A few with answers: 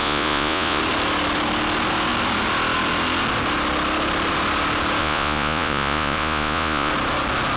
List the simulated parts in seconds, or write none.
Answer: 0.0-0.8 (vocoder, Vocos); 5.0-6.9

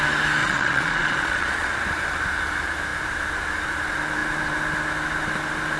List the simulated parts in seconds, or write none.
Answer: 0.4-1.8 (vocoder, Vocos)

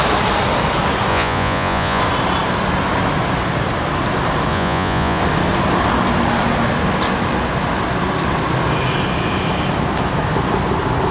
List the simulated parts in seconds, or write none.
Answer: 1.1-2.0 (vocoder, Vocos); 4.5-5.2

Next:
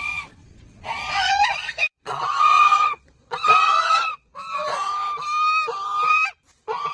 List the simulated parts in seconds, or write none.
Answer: 0.0-4.9 (vocoder, Vocos); 6.5-6.9

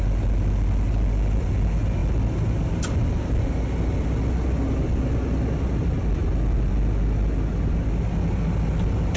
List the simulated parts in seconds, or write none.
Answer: none

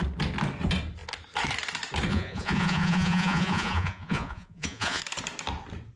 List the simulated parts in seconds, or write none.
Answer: 2.1-5.0 (vocoder, Vocos)